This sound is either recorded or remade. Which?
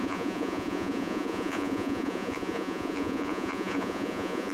remade